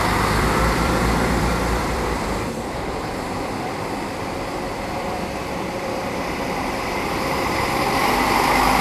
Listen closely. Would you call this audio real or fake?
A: fake